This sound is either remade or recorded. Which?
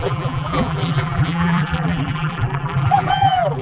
remade